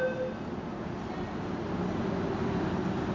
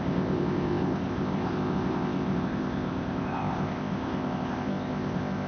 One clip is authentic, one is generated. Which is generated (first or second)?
second